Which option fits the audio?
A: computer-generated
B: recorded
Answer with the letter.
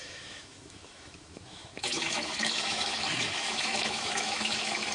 A